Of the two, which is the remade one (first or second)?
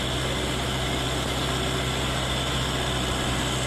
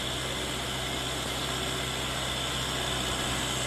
first